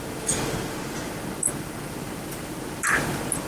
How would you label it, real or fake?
real